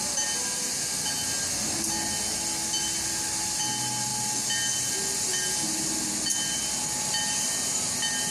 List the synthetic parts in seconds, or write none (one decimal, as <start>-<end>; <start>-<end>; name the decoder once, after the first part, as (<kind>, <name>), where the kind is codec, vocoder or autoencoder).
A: none